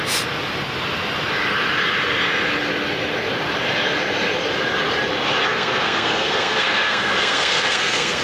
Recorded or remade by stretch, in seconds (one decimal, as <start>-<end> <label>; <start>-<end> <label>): 0.0-5.5 recorded; 5.5-8.2 remade